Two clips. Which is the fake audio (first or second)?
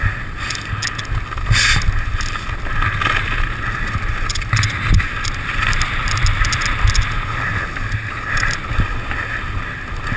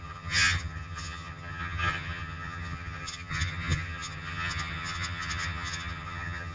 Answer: second